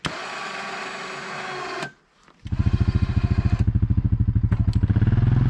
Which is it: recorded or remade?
recorded